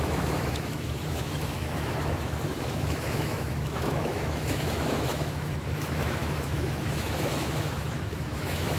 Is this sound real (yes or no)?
no